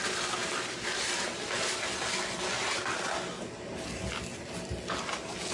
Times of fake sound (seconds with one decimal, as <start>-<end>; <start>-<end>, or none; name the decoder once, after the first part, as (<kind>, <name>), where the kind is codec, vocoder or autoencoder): none